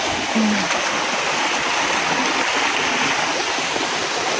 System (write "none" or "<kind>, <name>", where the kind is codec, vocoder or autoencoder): none